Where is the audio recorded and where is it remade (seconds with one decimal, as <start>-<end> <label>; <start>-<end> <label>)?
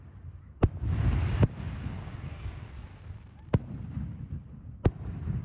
0.0-1.9 recorded; 1.9-2.7 remade; 2.7-5.4 recorded